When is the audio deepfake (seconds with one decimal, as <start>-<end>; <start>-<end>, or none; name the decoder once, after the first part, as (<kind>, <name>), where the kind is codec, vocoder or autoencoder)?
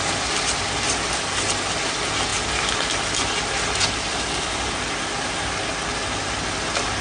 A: none